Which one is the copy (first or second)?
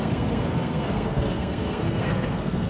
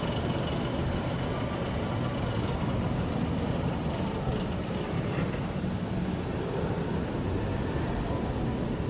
first